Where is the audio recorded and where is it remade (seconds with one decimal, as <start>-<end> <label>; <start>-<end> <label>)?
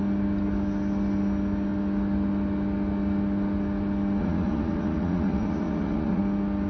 0.0-4.2 recorded; 4.2-6.2 remade; 6.2-6.7 recorded